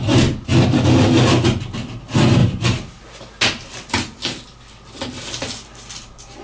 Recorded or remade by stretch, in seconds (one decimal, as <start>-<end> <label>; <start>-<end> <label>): 0.0-6.4 recorded